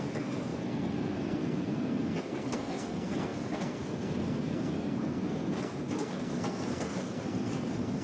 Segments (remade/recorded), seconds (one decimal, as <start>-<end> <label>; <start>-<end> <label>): 0.0-8.0 remade